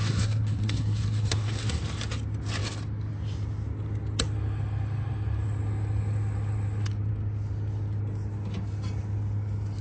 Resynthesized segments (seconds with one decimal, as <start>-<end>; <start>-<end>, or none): 0.0-1.8